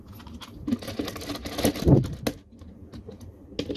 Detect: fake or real real